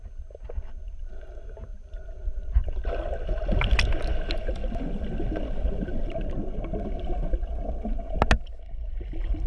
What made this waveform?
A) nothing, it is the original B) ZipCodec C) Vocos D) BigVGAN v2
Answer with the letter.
A